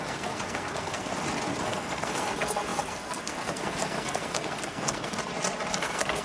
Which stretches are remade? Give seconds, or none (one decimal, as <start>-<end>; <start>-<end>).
0.0-1.1; 1.6-5.2; 5.7-6.2